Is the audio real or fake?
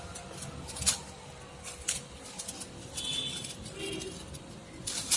real